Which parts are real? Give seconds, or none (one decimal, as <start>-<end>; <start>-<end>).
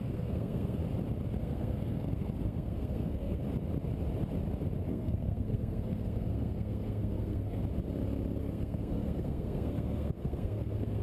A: 0.8-1.4; 3.4-4.9; 7.6-8.4